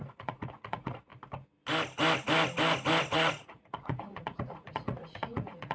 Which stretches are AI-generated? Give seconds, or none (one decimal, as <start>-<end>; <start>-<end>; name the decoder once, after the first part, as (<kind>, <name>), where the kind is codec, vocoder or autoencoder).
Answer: 0.0-1.1 (vocoder, Vocos); 3.0-5.7